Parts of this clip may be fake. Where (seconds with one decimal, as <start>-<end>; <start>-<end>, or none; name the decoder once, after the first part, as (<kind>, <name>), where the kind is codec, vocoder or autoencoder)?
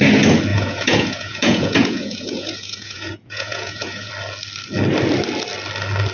0.5-4.1 (vocoder, Vocos)